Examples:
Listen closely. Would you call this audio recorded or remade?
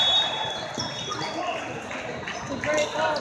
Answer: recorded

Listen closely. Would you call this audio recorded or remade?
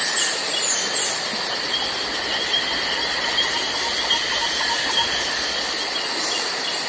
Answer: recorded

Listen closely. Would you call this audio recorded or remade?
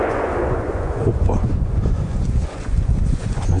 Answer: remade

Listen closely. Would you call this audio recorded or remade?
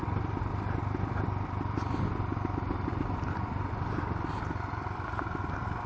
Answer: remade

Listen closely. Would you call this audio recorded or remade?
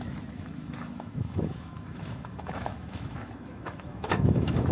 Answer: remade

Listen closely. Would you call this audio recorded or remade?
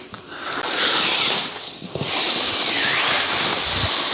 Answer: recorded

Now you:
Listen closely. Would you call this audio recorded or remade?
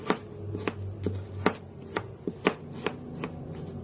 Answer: recorded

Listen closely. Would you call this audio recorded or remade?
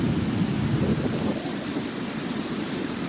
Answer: recorded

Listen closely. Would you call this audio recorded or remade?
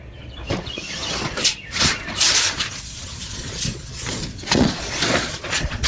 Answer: remade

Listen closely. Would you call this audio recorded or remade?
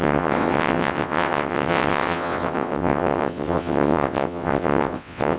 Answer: remade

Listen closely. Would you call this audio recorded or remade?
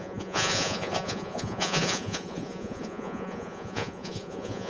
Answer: remade